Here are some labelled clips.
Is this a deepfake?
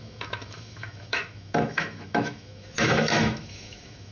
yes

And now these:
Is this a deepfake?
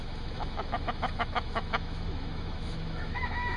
yes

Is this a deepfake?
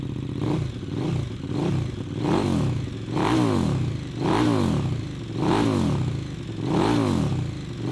no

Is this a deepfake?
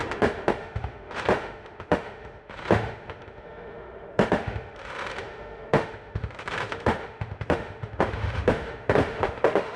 yes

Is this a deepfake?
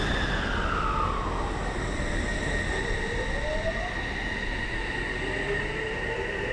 no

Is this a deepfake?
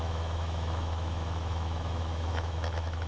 yes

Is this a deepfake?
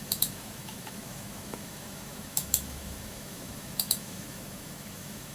yes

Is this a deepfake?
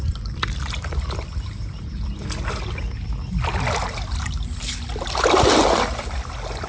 no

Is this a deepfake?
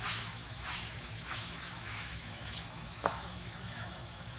yes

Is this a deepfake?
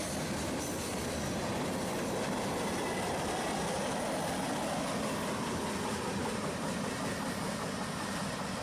no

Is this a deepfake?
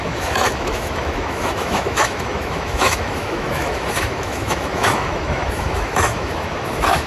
yes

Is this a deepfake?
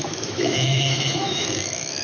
yes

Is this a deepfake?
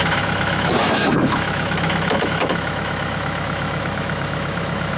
yes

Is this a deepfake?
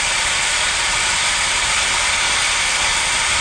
no